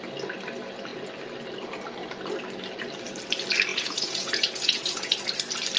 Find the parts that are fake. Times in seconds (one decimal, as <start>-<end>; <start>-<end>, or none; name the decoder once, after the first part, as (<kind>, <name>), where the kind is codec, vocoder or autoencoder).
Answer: 3.7-5.2 (vocoder, Vocos)